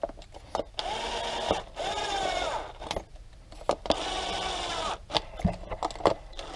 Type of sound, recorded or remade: recorded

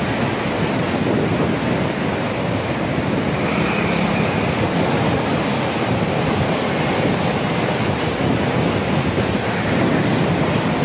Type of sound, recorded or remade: recorded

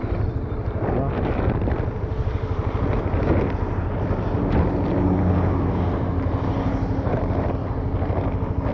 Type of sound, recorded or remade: recorded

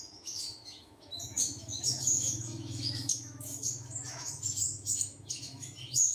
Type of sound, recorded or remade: remade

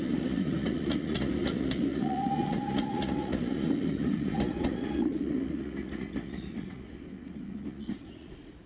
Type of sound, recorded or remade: remade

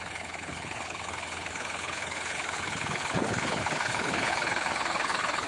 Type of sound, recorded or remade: remade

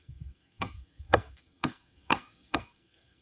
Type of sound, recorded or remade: remade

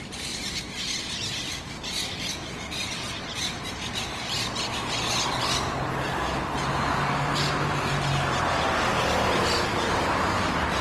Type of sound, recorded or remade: recorded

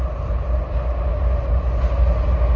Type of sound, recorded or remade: recorded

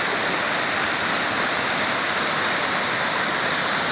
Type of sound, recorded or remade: recorded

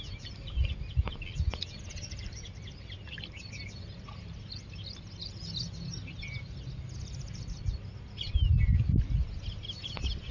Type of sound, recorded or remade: recorded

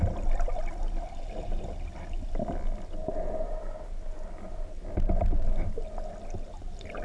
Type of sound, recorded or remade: recorded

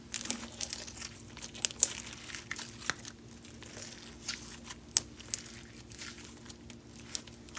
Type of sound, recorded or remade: recorded